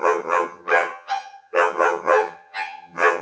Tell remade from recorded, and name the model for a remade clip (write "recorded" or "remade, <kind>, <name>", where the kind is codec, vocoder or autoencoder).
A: remade, vocoder, HiFi-GAN